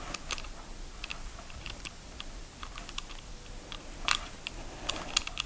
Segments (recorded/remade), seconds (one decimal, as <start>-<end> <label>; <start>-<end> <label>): 0.0-1.1 recorded; 1.1-2.2 remade; 2.2-5.5 recorded